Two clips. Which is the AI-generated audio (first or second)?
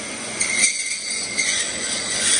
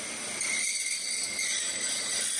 first